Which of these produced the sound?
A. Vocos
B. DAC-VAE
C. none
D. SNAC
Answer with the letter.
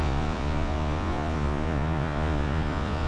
A